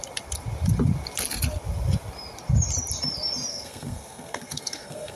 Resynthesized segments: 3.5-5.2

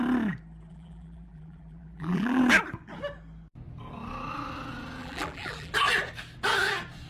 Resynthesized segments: 0.7-2.4; 5.0-5.7

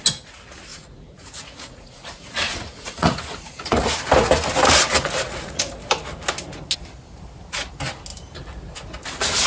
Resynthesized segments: 0.7-4.0; 4.9-5.6

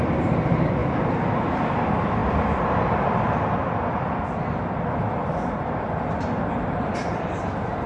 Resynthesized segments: 2.2-6.9